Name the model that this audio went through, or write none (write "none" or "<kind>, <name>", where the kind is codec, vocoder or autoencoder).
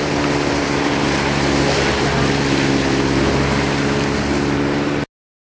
none